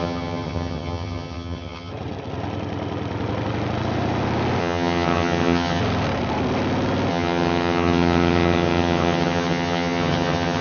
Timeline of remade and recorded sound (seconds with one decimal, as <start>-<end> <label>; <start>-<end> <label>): 0.0-1.9 remade; 1.9-4.6 recorded; 4.6-5.8 remade; 5.8-7.1 recorded; 7.1-10.6 remade

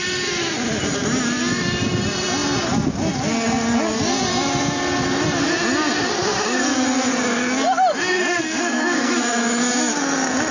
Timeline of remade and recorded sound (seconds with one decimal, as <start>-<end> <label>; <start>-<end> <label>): 0.0-8.4 recorded; 8.4-9.1 remade; 9.1-10.5 recorded